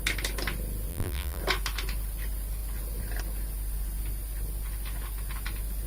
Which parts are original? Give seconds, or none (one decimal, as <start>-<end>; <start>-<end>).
0.0-0.9; 1.4-5.9